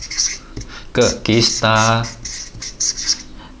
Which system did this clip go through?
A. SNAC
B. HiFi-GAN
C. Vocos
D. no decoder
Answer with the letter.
D